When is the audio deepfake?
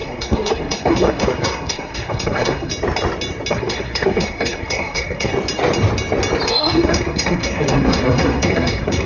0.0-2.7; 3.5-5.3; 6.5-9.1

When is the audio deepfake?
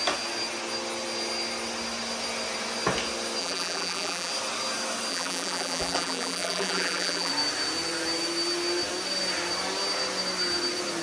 3.4-4.3; 5.1-7.3